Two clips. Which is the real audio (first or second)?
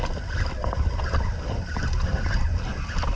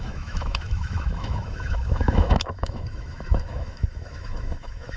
first